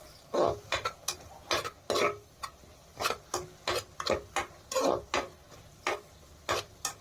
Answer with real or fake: real